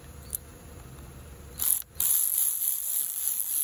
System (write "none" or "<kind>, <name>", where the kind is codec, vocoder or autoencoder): none